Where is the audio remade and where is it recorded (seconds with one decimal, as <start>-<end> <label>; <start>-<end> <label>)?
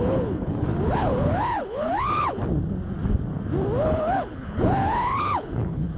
0.0-2.4 remade; 2.4-3.8 recorded; 3.8-6.0 remade